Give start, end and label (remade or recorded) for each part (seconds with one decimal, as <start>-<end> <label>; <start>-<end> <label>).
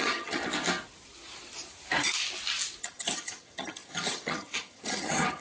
0.0-0.4 remade; 0.4-2.8 recorded; 2.8-5.4 remade